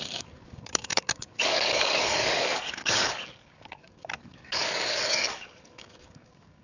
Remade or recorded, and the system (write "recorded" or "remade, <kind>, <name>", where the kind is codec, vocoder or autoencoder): remade, codec, DAC